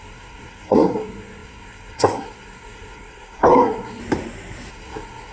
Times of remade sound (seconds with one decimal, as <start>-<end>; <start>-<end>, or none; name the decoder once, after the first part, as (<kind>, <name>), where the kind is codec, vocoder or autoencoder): 0.0-4.0 (codec, SNAC); 4.7-5.3